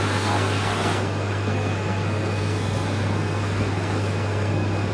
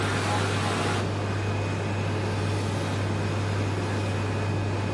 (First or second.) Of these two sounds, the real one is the second